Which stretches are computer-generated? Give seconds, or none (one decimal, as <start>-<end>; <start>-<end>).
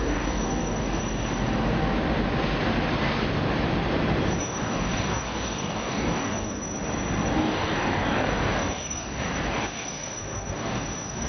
0.0-1.0; 4.4-6.6; 7.4-11.3